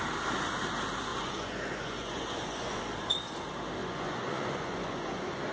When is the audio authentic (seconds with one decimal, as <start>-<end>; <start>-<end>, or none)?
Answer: 0.0-1.1; 2.8-3.8